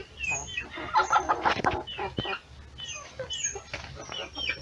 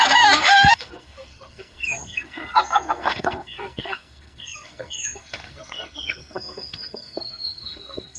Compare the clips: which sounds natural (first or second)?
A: first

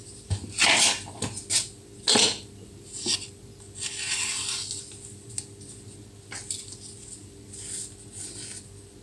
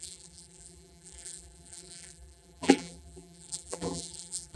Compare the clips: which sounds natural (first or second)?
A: first